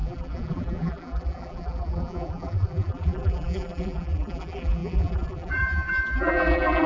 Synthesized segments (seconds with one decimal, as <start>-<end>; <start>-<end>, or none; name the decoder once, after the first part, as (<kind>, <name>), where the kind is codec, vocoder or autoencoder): 0.0-6.9 (vocoder, BigVGAN v2)